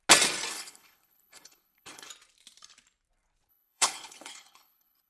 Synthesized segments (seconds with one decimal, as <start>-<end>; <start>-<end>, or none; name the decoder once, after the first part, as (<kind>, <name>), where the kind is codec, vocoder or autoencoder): 0.5-2.1 (codec, HILCodec); 3.5-5.1